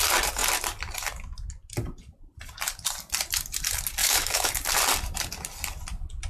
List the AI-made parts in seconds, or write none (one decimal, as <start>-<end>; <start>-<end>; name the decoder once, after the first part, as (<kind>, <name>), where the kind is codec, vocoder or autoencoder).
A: 4.0-4.5 (autoencoder, DAC-VAE)